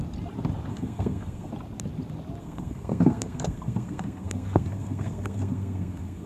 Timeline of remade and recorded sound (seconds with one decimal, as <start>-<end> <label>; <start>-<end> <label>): 0.0-0.7 recorded; 0.7-1.5 remade; 1.5-2.4 recorded; 2.4-6.3 remade